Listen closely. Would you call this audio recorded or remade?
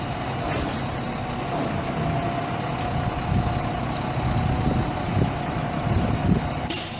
recorded